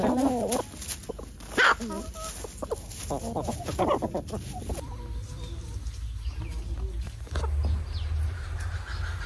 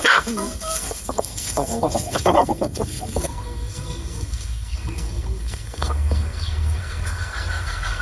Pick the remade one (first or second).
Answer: second